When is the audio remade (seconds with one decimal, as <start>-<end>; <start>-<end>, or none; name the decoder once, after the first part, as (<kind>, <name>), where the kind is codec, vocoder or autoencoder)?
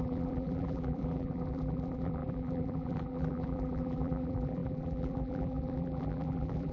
0.0-6.7 (vocoder, BigVGAN v2)